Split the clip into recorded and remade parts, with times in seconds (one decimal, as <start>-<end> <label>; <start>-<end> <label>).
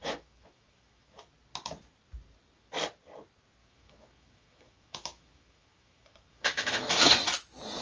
0.0-1.2 remade; 1.2-3.6 recorded; 3.6-7.1 remade; 7.1-7.8 recorded